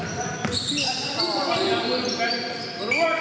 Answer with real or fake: real